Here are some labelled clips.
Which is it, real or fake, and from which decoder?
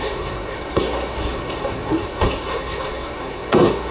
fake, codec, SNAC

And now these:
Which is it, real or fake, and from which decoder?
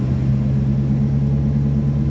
real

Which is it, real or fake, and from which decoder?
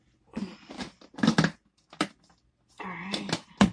real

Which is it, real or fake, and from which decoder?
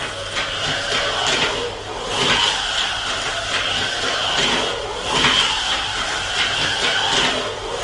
real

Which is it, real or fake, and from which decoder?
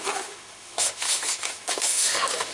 fake, autoencoder, DAC-VAE